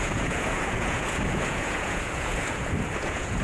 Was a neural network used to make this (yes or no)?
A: yes